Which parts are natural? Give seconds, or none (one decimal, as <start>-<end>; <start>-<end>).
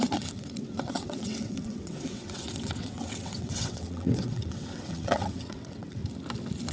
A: 6.0-6.7